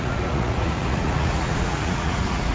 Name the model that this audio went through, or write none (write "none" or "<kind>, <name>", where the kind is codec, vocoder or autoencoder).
vocoder, Vocos